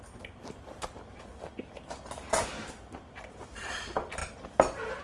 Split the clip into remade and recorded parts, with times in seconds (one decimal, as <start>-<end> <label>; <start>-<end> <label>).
0.0-5.0 recorded